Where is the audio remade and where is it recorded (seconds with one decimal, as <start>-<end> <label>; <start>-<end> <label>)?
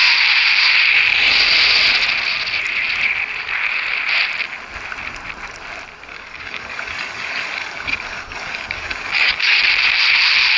0.0-6.1 recorded; 6.1-9.6 remade; 9.6-10.6 recorded